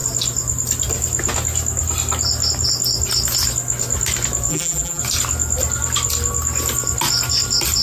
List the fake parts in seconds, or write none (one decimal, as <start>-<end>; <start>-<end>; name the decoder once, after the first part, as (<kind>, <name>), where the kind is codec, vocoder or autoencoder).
4.5-5.0 (vocoder, BigVGAN v2)